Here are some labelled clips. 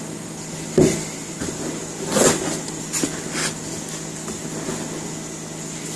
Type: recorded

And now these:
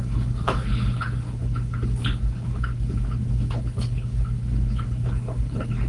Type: remade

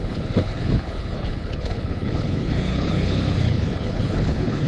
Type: remade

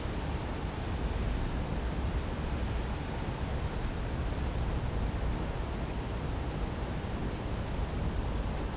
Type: recorded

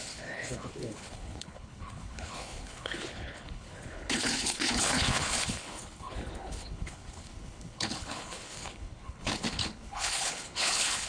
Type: remade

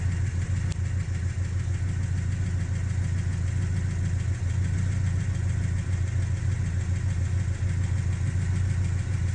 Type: recorded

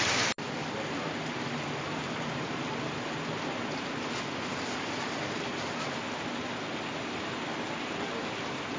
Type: recorded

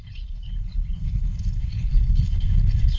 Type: remade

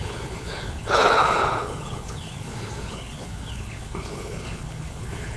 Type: remade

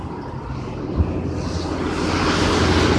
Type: recorded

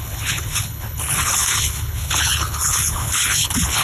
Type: remade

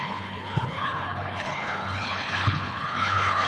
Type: remade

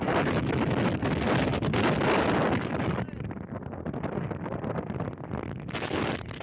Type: recorded